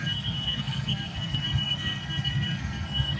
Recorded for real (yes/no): no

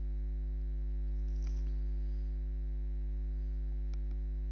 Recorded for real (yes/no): yes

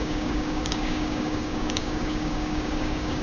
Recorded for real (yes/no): no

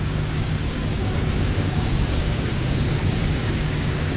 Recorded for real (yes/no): no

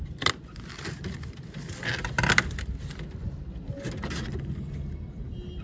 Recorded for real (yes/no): yes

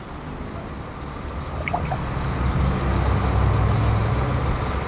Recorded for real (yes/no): yes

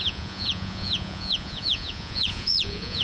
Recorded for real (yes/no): no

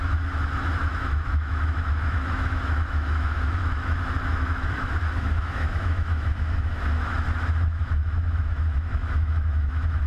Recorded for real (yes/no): no